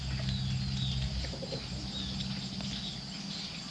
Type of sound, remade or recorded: recorded